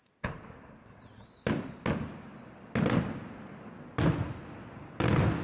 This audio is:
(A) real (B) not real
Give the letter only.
A